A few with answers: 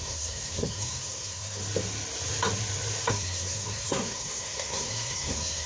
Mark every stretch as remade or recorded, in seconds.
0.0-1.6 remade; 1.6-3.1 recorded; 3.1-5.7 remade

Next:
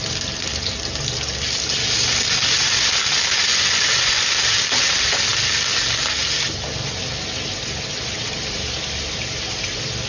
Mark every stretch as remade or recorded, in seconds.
0.0-3.5 recorded; 3.5-4.2 remade; 4.2-10.1 recorded

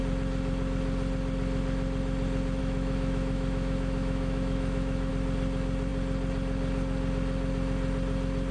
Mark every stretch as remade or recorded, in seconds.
0.0-2.6 recorded; 2.6-5.1 remade; 5.1-8.5 recorded

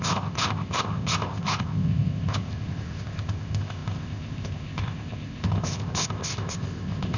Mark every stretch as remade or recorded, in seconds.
0.0-7.2 remade